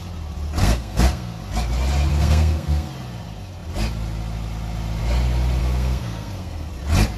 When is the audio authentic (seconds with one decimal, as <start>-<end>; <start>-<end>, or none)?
0.0-0.6; 1.4-2.1; 2.9-5.6; 6.7-7.2